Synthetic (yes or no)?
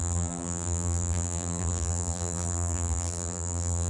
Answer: yes